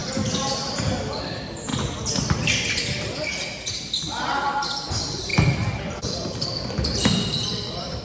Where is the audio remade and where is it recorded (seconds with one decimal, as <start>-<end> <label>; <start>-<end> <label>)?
0.0-1.7 remade; 1.7-2.3 recorded; 2.3-3.3 remade; 3.3-4.0 recorded; 4.0-8.0 remade